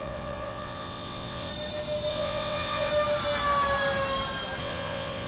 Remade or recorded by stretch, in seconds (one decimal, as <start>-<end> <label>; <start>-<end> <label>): 0.0-1.5 remade; 1.5-2.1 recorded; 2.1-2.9 remade; 2.9-4.6 recorded; 4.6-5.3 remade